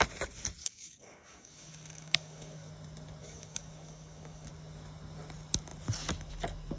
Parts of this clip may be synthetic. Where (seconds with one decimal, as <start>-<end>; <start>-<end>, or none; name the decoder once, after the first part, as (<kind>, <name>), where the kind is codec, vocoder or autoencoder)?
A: 0.6-2.7 (codec, DAC); 3.2-4.5